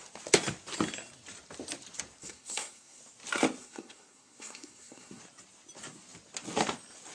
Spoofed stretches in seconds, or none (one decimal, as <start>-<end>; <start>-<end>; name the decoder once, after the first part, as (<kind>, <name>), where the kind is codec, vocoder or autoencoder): 2.2-3.0 (codec, SNAC); 3.6-5.2